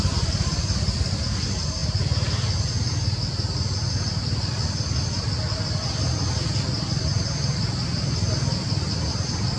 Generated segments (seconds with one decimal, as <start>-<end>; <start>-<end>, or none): none